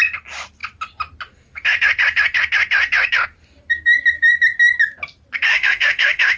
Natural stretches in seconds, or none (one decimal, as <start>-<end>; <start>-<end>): 0.0-5.5